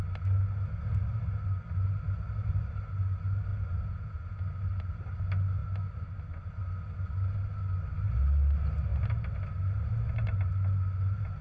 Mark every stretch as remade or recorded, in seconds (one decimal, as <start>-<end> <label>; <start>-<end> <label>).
0.0-3.5 recorded; 3.5-4.4 remade; 4.4-11.4 recorded